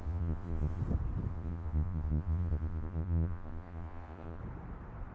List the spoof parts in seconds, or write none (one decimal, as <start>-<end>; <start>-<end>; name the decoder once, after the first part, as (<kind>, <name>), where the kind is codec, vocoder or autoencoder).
0.0-0.8 (vocoder, Vocos); 1.3-4.4